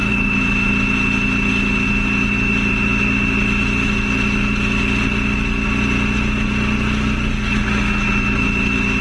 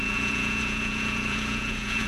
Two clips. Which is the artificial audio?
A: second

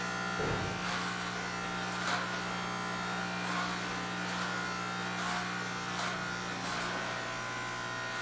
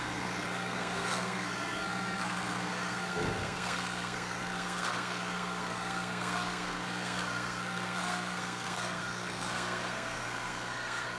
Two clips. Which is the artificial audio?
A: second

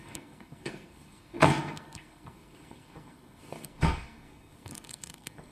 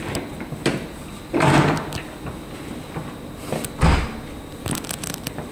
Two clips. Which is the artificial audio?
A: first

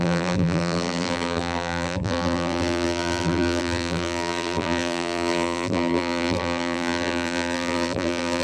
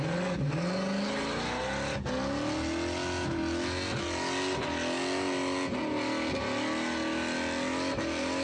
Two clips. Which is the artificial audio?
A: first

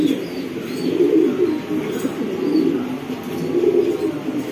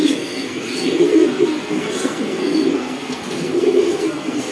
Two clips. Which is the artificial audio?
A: second